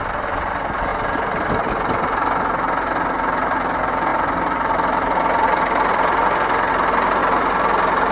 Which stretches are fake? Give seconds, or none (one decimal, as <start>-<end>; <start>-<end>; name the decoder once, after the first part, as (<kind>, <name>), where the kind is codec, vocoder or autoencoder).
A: 0.9-1.7 (vocoder, BigVGAN v2); 4.1-6.7